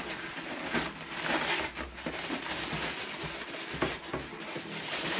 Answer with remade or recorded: recorded